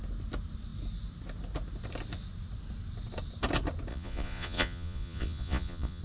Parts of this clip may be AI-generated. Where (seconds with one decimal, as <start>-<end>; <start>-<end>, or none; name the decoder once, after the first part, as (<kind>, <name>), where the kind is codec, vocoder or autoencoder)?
3.9-6.0 (vocoder, Vocos)